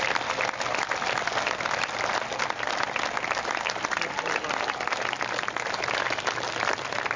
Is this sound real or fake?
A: real